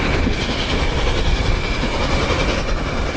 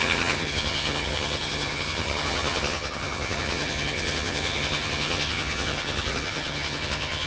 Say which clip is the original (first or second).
first